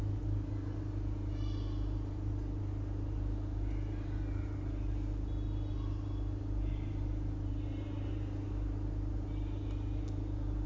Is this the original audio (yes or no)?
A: yes